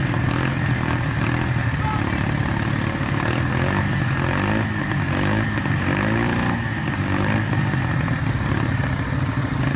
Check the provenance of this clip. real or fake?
real